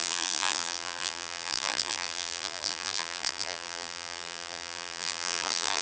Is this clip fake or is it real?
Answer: fake